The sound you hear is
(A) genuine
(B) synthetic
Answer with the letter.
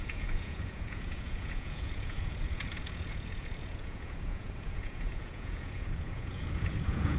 B